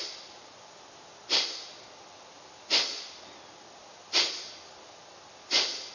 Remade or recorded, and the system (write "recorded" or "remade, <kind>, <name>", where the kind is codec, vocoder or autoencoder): recorded